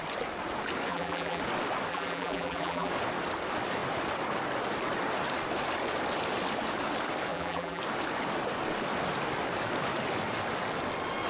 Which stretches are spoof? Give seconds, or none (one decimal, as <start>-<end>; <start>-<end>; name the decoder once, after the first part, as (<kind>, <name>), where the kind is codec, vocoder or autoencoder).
0.9-1.4 (vocoder, BigVGAN v2); 1.9-2.9; 7.3-7.8